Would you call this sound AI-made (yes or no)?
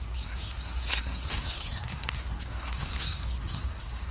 yes